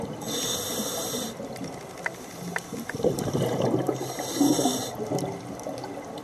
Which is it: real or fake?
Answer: real